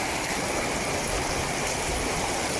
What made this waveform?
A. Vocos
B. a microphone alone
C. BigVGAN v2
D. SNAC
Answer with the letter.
B